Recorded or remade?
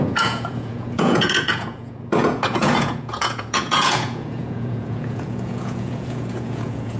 remade